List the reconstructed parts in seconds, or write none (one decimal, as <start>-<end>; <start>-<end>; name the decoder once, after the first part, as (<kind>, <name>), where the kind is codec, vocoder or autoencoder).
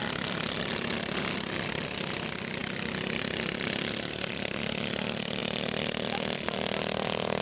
none